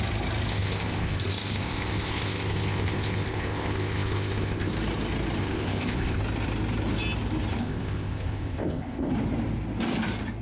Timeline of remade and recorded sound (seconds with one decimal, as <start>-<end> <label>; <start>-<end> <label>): 0.0-0.5 recorded; 0.5-4.7 remade; 4.7-5.4 recorded; 5.4-6.2 remade; 6.2-7.6 recorded; 7.6-9.1 remade; 9.1-10.4 recorded

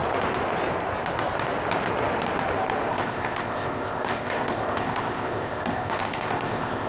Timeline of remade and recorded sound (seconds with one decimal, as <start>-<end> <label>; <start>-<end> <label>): 0.0-2.9 recorded; 2.9-6.9 remade

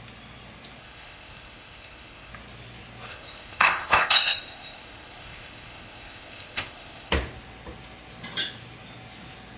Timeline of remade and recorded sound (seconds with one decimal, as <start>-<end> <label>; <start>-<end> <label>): 0.0-0.8 recorded; 0.8-2.3 remade; 2.3-3.1 recorded; 3.1-7.1 remade; 7.1-9.6 recorded

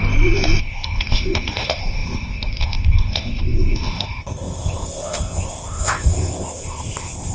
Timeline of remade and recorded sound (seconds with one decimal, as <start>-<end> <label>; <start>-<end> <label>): 0.0-0.6 recorded; 0.6-7.3 remade

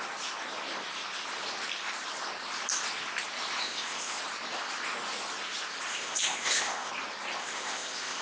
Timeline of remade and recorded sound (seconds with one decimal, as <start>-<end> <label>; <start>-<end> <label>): 0.0-3.6 recorded; 3.6-4.2 remade; 4.2-5.9 recorded; 5.9-6.9 remade; 6.9-7.4 recorded; 7.4-8.2 remade

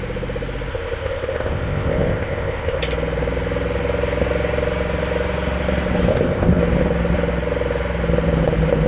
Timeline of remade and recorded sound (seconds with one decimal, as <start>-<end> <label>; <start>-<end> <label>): 0.0-0.7 recorded; 0.7-2.8 remade; 2.8-6.1 recorded; 6.1-6.6 remade; 6.6-8.9 recorded

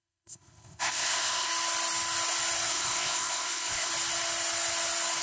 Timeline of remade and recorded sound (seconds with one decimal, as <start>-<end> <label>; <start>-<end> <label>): 0.0-1.5 remade; 1.5-2.7 recorded; 2.7-3.9 remade; 3.9-5.2 recorded